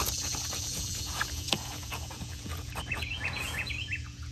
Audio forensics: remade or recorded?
remade